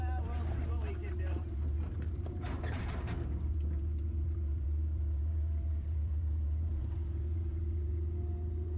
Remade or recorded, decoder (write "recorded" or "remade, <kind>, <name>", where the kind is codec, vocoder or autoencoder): remade, vocoder, BigVGAN v2